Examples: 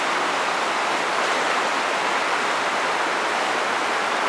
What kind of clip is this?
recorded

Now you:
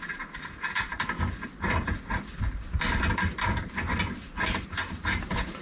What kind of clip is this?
remade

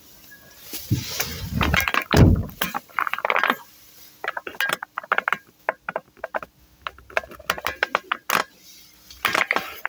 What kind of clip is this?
recorded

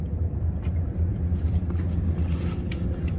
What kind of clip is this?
remade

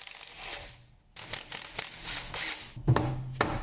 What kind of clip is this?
recorded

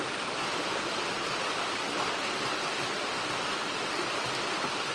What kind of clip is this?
recorded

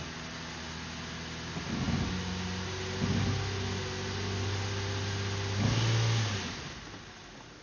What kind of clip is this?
recorded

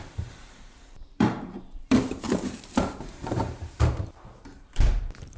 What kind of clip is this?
remade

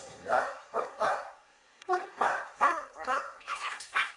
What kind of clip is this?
remade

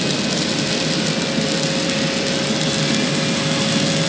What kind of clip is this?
recorded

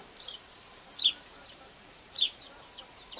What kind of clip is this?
remade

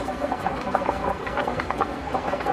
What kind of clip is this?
remade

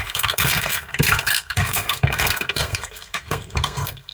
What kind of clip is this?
remade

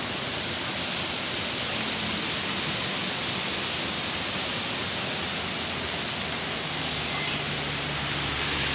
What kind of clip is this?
recorded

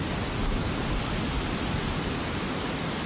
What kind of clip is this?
recorded